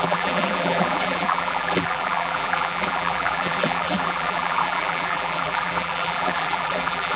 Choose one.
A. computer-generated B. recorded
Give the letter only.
A